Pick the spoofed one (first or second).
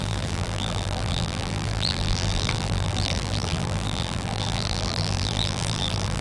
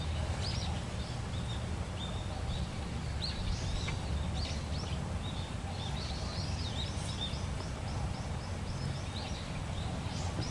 first